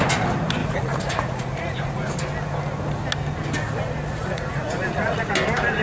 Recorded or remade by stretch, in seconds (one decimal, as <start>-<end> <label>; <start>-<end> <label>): 0.0-0.6 recorded; 0.6-2.1 remade; 2.1-4.2 recorded; 4.2-5.3 remade; 5.3-5.8 recorded